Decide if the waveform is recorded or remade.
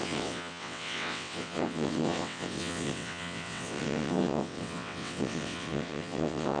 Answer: remade